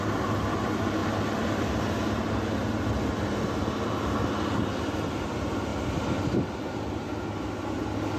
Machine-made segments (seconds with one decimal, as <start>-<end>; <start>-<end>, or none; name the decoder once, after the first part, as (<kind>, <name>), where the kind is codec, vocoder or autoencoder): none